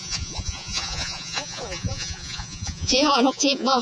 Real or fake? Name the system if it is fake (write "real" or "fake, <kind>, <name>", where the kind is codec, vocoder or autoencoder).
fake, vocoder, Vocos